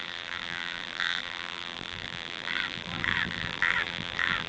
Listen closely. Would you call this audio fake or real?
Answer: fake